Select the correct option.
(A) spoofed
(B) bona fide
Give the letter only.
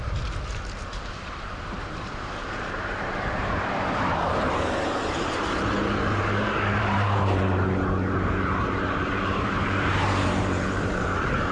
A